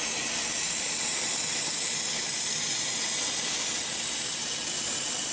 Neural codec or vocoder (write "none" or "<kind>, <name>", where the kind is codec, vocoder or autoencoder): none